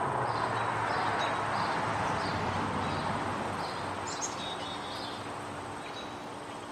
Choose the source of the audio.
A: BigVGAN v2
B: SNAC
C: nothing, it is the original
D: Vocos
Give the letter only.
C